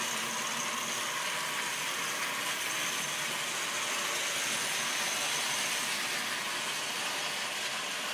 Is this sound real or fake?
real